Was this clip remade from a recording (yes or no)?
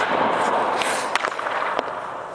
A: yes